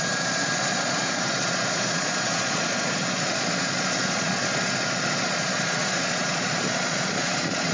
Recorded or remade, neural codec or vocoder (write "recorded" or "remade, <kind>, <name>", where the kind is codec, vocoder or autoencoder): remade, vocoder, Vocos